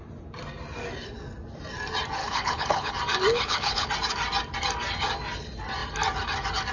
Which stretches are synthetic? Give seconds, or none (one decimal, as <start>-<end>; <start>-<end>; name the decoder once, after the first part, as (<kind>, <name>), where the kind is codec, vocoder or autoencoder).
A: 2.2-2.9 (codec, HILCodec); 3.3-3.9